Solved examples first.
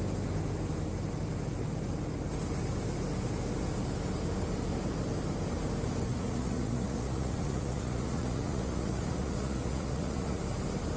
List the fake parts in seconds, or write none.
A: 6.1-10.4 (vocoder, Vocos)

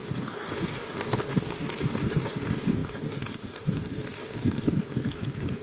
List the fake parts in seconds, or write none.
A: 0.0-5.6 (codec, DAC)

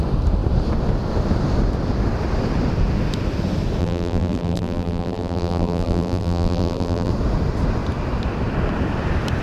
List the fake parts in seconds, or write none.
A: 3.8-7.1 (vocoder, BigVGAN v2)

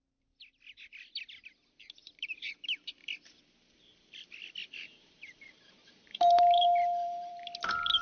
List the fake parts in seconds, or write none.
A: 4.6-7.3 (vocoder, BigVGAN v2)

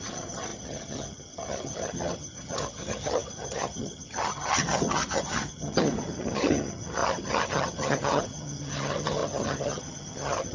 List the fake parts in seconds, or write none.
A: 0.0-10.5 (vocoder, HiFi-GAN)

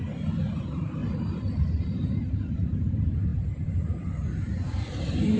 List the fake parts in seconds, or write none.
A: 0.0-5.4 (vocoder, BigVGAN v2)

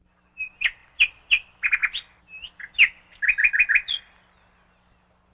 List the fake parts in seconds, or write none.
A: none

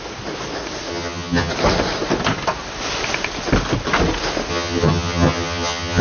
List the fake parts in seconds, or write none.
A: 0.9-1.5 (vocoder, HiFi-GAN); 4.5-6.0